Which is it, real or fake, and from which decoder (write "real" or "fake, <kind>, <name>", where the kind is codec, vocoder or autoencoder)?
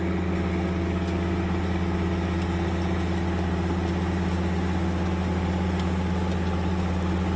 real